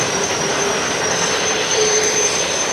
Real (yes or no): no